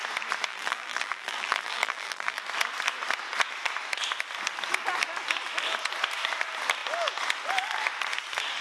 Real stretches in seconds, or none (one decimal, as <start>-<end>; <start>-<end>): 0.0-0.5; 2.4-8.6